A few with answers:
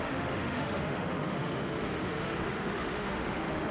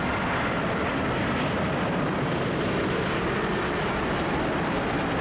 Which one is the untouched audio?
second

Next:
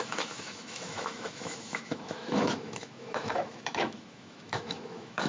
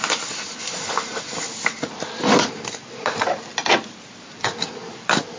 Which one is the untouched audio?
second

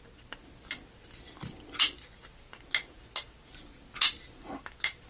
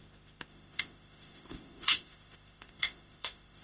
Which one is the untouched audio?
first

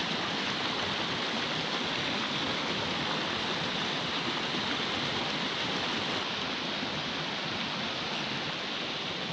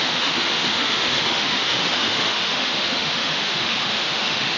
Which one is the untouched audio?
first